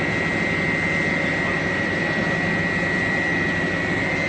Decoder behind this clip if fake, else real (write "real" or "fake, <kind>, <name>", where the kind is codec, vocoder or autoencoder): real